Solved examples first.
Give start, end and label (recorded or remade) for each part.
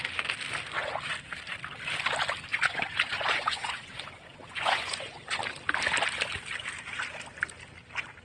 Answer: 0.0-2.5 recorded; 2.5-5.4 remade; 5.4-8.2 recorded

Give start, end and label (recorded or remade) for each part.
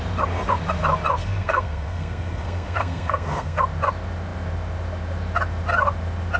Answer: 0.0-1.2 recorded; 1.2-3.6 remade; 3.6-6.4 recorded